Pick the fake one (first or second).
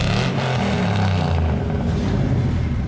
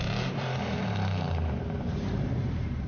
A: second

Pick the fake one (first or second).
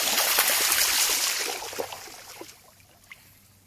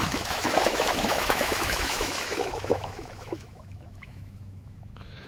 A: second